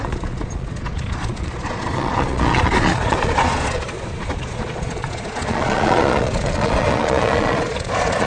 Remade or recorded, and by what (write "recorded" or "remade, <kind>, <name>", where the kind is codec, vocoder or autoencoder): remade, vocoder, Vocos